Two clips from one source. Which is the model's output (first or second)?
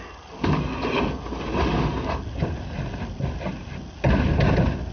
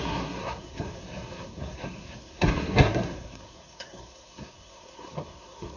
second